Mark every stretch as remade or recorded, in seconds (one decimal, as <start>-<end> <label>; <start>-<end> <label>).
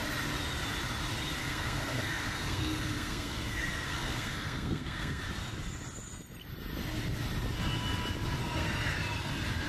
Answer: 0.0-1.4 recorded; 1.4-5.2 remade; 5.2-8.4 recorded; 8.4-9.0 remade; 9.0-9.7 recorded